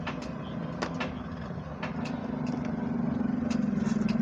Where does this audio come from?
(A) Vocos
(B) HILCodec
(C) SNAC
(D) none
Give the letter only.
D